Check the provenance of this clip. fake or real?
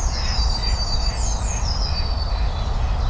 real